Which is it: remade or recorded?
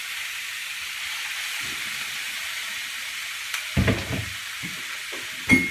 recorded